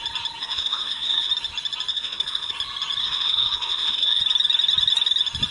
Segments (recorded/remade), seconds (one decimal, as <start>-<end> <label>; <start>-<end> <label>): 0.0-0.4 recorded; 0.4-1.3 remade; 1.3-1.9 recorded; 1.9-2.5 remade; 2.5-3.0 recorded; 3.0-4.2 remade; 4.2-5.5 recorded

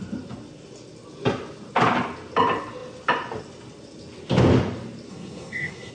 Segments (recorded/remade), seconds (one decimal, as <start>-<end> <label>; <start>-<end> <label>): 0.0-5.1 recorded; 5.1-5.9 remade

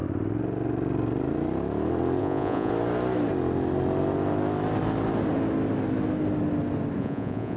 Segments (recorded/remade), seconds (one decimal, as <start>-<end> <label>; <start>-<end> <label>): 0.0-2.2 recorded; 2.2-2.7 remade; 2.7-7.0 recorded; 7.0-7.6 remade

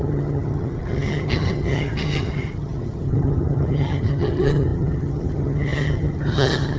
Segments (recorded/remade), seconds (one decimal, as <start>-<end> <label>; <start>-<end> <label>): 0.0-6.8 remade

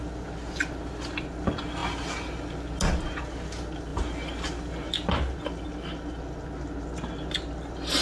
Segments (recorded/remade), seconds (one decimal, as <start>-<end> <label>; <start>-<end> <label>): 0.0-8.0 recorded

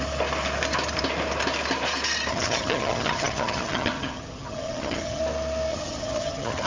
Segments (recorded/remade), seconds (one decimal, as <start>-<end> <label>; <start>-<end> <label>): 0.0-2.3 recorded; 2.3-5.2 remade; 5.2-5.7 recorded; 5.7-6.7 remade